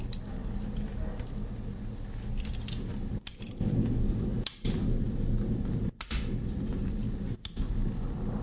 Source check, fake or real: real